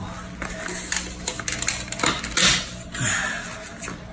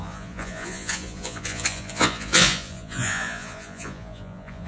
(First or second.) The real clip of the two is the first